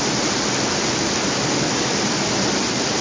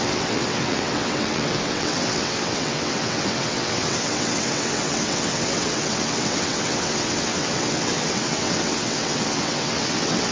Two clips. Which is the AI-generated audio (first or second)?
second